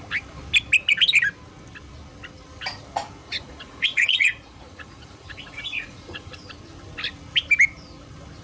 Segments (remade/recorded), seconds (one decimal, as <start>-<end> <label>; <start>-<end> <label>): 0.0-3.2 recorded; 3.2-6.4 remade; 6.4-8.4 recorded